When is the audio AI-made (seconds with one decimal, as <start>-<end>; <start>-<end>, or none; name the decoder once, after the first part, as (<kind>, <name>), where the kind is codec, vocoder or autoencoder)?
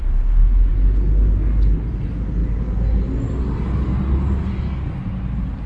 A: none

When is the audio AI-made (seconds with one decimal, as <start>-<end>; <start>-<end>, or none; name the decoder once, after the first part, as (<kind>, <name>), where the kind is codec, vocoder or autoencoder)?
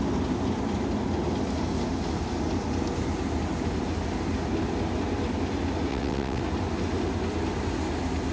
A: 5.9-6.4 (vocoder, WaveNeXt)